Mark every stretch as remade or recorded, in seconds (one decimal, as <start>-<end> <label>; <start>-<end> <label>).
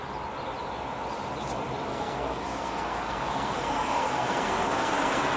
0.0-1.9 recorded; 1.9-5.4 remade